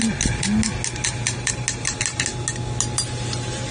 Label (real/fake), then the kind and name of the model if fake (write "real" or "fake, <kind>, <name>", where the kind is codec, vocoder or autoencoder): real